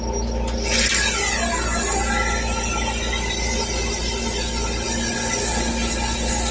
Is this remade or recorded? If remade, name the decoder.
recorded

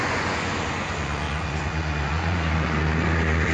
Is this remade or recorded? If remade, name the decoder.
remade, vocoder, Vocos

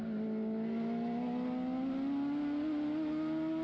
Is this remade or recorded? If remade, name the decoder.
recorded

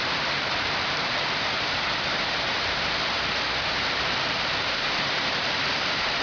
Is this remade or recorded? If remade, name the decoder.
remade, vocoder, BigVGAN v2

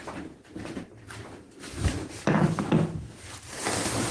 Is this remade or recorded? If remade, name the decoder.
recorded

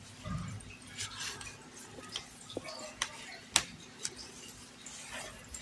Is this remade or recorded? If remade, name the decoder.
recorded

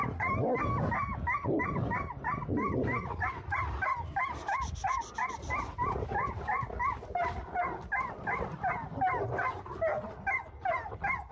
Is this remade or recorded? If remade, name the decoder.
recorded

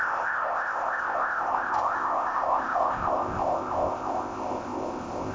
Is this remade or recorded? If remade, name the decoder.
remade, codec, ZipCodec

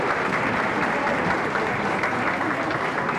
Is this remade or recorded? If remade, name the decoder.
recorded